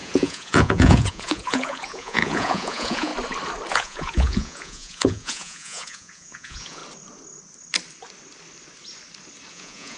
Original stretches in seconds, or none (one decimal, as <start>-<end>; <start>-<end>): 3.1-3.7; 6.8-9.5

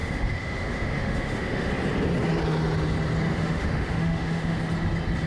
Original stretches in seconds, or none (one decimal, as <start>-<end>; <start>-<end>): 1.7-3.3; 4.6-5.3

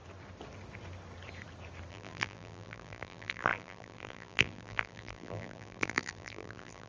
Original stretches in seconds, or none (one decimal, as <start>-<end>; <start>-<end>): 0.0-1.9